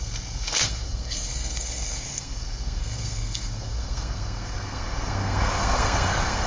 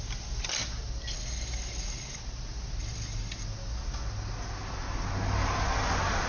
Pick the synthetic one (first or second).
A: first